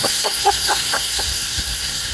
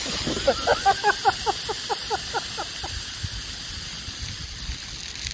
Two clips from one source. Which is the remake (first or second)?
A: first